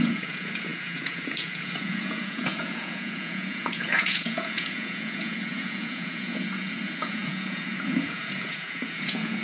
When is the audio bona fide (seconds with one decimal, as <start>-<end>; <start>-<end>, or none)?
none